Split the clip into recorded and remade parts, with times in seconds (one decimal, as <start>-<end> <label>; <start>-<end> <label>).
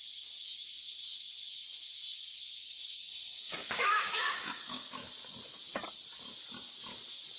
0.0-2.6 recorded; 2.6-4.9 remade; 4.9-7.4 recorded